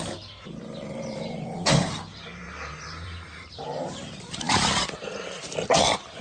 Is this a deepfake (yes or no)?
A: yes